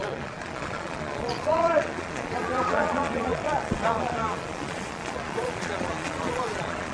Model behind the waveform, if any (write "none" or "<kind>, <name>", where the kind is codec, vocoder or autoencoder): vocoder, Vocos